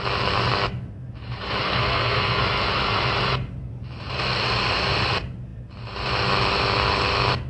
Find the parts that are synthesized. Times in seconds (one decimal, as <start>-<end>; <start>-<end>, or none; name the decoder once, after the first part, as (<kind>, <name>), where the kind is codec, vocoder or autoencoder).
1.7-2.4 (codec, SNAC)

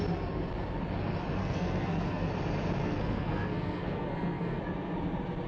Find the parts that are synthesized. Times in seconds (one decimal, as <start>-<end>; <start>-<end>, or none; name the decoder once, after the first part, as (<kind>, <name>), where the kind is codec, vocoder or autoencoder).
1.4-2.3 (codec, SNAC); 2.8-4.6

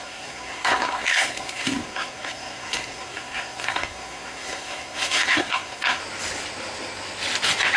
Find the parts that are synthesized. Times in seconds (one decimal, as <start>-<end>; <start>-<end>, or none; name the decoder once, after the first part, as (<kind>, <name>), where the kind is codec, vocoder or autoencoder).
0.0-6.0 (codec, SNAC)

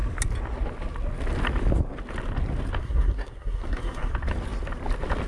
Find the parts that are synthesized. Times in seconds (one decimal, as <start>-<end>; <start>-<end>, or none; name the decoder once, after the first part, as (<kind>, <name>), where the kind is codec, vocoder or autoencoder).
2.8-4.1 (codec, SNAC)

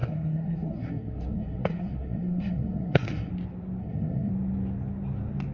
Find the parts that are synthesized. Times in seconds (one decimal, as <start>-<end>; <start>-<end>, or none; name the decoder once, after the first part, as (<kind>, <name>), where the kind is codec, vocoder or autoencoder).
0.0-3.3 (codec, SNAC); 3.8-4.3